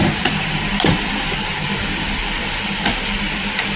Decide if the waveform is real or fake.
fake